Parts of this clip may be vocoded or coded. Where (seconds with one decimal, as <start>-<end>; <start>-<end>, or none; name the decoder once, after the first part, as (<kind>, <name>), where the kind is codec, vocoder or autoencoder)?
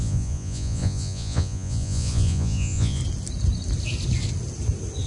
0.0-3.0 (vocoder, Vocos)